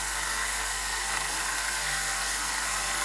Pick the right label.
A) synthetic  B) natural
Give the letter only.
A